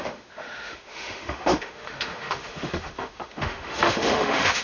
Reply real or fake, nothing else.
fake